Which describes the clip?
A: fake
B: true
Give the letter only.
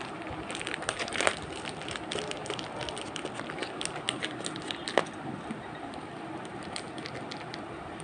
B